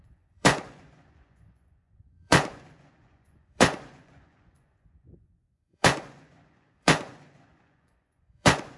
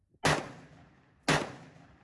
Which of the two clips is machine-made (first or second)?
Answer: first